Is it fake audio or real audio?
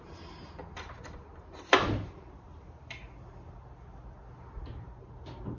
real